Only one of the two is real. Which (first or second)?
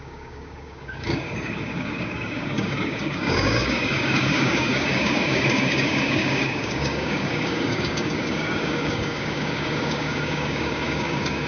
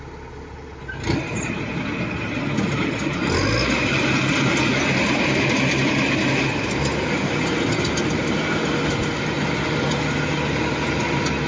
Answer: second